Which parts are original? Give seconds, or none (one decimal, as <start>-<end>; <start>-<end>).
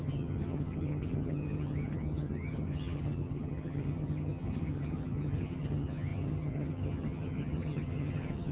none